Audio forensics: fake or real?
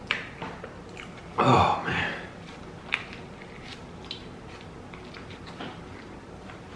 real